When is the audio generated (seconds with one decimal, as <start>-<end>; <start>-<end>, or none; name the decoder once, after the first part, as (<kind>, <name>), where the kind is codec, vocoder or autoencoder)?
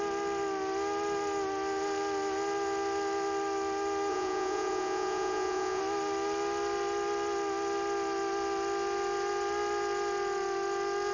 4.1-5.8 (vocoder, Vocos)